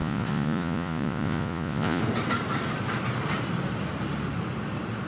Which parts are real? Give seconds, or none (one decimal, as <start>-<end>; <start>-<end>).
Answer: 2.0-5.1